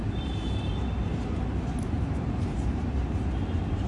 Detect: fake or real fake